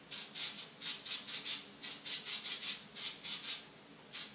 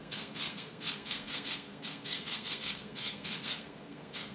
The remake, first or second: second